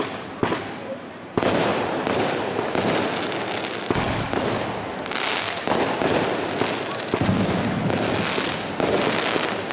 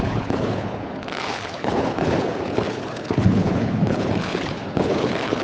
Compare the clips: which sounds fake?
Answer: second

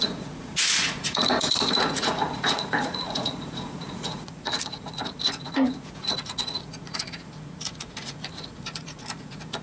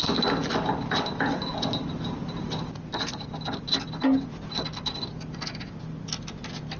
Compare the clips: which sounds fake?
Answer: first